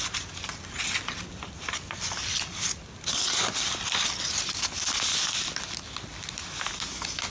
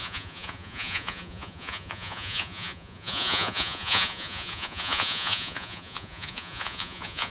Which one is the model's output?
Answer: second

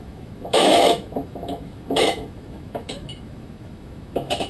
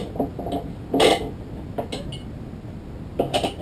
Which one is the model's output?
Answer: first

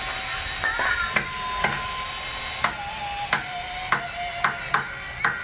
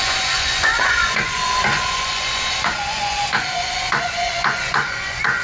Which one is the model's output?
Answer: second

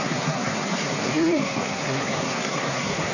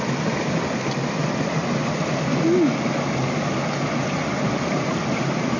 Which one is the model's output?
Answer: first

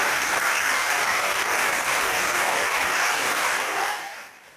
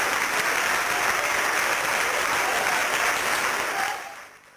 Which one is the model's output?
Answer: first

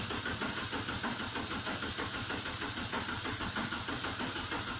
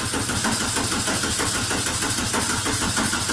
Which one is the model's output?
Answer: first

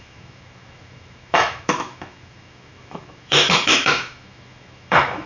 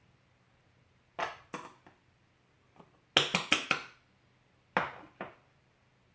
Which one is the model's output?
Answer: first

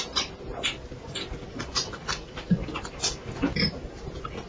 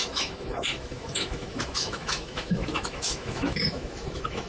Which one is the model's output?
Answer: second